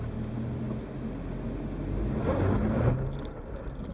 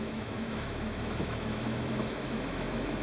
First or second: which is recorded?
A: first